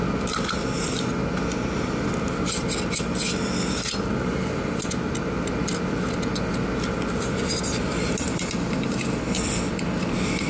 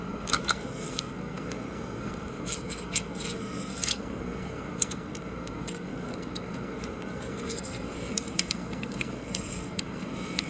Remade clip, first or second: second